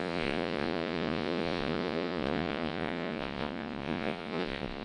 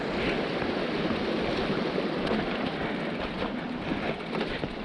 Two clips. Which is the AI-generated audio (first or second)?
first